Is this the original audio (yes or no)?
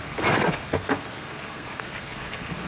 no